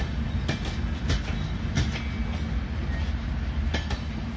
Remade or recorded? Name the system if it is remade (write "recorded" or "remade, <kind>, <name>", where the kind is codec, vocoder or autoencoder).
recorded